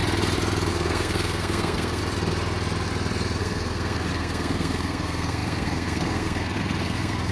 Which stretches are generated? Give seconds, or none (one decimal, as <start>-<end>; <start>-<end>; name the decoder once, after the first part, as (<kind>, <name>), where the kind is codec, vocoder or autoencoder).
0.7-2.0 (codec, SNAC); 3.4-7.3